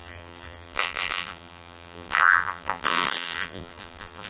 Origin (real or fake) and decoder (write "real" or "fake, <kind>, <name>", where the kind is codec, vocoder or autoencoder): fake, vocoder, BigVGAN v2